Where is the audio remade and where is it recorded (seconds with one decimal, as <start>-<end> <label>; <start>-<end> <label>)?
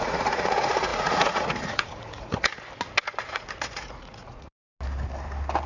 0.0-2.5 remade; 2.5-3.2 recorded; 3.2-4.7 remade; 4.7-5.7 recorded